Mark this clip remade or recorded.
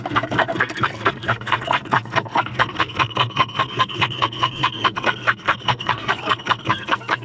remade